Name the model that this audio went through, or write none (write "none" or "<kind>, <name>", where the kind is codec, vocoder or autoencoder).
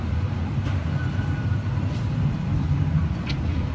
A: none